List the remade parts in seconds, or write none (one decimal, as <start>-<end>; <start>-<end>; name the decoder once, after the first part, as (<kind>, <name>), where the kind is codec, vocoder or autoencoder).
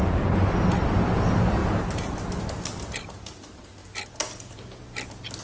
1.6-2.2 (vocoder, BigVGAN v2)